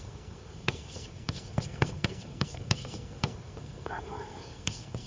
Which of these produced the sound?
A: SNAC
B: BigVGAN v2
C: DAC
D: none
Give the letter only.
A